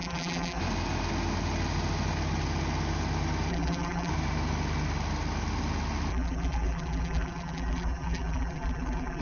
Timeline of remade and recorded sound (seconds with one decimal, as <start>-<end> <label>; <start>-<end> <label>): 0.0-0.6 remade; 0.6-3.5 recorded; 3.5-4.1 remade; 4.1-6.1 recorded; 6.1-9.2 remade